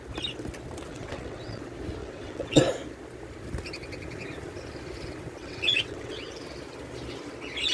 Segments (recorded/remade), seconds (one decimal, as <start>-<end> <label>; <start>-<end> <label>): 0.0-0.9 recorded; 0.9-1.6 remade; 1.6-2.0 recorded; 2.0-2.6 remade; 2.6-5.4 recorded; 5.4-6.3 remade; 6.3-7.7 recorded

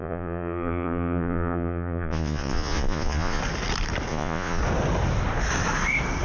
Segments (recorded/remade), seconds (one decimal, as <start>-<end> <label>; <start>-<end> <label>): 0.0-3.4 remade; 3.4-4.1 recorded; 4.1-4.6 remade; 4.6-6.2 recorded

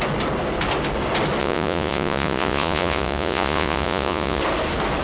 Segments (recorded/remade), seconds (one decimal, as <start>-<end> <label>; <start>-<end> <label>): 0.0-1.4 recorded; 1.4-4.4 remade; 4.4-5.0 recorded

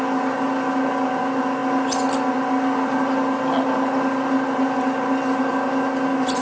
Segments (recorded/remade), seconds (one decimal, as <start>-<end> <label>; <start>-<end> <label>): 0.0-6.4 recorded

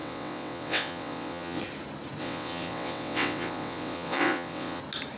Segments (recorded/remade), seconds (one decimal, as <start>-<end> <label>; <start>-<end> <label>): 0.0-1.6 remade; 1.6-2.2 recorded; 2.2-4.8 remade; 4.8-5.2 recorded

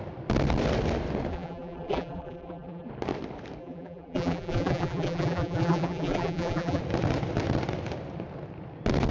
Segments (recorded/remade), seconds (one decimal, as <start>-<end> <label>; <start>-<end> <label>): 0.0-1.3 recorded; 1.3-2.9 remade; 2.9-3.6 recorded; 3.6-6.8 remade; 6.8-9.1 recorded

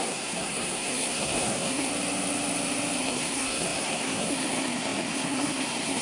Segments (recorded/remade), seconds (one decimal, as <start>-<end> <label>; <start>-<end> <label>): 0.0-1.9 remade; 1.9-3.0 recorded; 3.0-6.0 remade

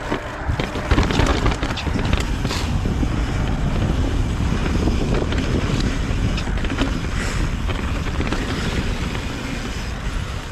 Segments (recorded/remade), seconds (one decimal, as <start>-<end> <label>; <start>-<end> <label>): 0.0-4.6 recorded; 4.6-6.3 remade; 6.3-7.7 recorded; 7.7-9.3 remade; 9.3-10.5 recorded